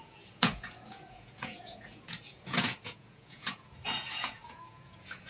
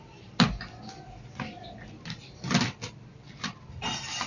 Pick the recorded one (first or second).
second